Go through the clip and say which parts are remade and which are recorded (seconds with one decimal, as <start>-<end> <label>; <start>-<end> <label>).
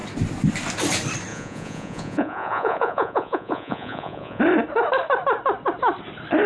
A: 0.0-1.3 recorded; 1.3-4.4 remade; 4.4-6.5 recorded